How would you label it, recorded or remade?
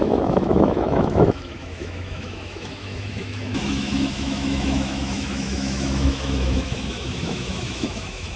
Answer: remade